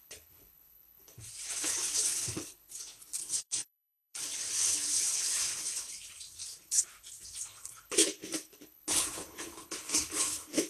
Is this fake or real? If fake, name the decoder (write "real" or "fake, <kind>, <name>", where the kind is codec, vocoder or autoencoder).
fake, codec, HILCodec